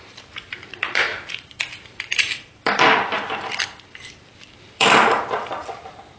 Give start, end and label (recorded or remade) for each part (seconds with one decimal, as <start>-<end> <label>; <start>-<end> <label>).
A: 0.0-6.2 remade

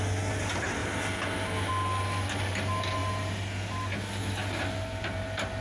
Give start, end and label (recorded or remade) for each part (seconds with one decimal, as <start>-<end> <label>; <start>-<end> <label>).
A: 0.0-5.6 recorded

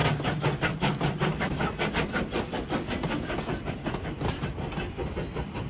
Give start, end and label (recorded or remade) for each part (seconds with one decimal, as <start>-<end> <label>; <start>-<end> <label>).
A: 0.0-5.7 recorded

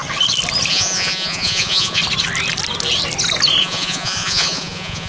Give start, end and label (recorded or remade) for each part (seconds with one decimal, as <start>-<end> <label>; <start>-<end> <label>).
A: 0.0-0.7 recorded; 0.7-2.0 remade; 2.0-3.6 recorded; 3.6-5.1 remade

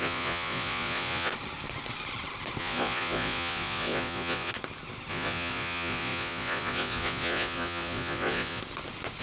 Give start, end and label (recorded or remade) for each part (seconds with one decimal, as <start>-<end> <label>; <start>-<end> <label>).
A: 0.0-1.3 remade; 1.3-2.6 recorded; 2.6-4.5 remade; 4.5-5.1 recorded; 5.1-8.6 remade; 8.6-9.2 recorded

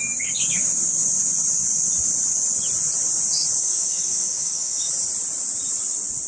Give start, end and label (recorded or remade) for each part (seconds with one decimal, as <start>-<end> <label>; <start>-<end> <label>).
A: 0.0-3.6 recorded; 3.6-4.9 remade; 4.9-6.3 recorded

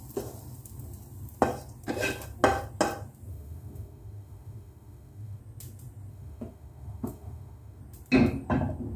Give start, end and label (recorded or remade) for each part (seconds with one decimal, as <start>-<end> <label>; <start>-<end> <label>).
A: 0.0-3.3 recorded; 3.3-5.4 remade; 5.4-6.1 recorded; 6.1-7.8 remade; 7.8-9.0 recorded